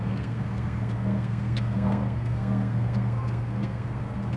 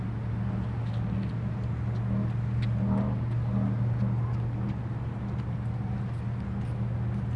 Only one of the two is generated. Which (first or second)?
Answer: first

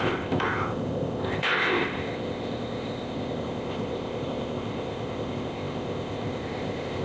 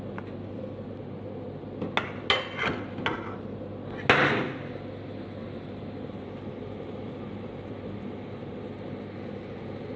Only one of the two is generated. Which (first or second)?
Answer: first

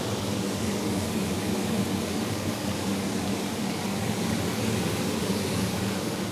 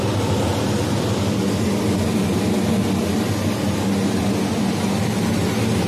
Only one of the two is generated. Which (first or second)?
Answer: first